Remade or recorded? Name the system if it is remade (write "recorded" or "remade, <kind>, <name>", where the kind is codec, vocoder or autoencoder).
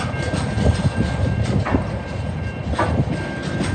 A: recorded